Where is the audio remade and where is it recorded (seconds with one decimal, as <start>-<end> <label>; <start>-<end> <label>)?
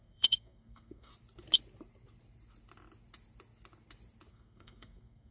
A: 0.0-1.1 remade; 1.1-4.3 recorded; 4.3-5.3 remade